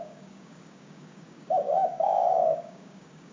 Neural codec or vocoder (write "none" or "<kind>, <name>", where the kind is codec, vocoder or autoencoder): codec, DAC